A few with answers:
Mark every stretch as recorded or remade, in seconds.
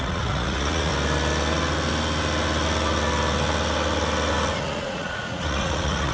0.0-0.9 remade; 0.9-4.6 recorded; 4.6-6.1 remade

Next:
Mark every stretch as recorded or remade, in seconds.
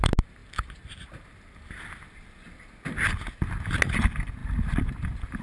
0.0-5.4 recorded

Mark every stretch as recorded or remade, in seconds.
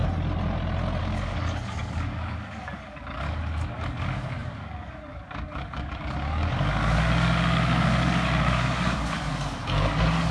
0.0-1.0 recorded; 1.0-10.3 remade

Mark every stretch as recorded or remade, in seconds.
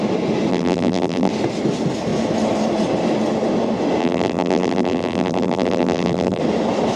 0.0-0.5 recorded; 0.5-1.3 remade; 1.3-4.0 recorded; 4.0-6.4 remade; 6.4-7.0 recorded